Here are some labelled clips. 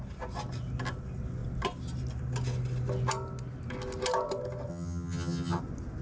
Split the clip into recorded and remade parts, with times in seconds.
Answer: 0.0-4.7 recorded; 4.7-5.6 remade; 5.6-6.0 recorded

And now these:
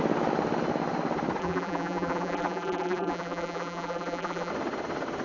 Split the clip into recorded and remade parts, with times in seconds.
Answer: 0.0-1.4 recorded; 1.4-4.5 remade; 4.5-5.2 recorded